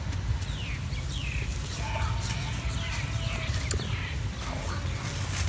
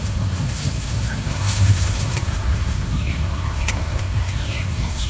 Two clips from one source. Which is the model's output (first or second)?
second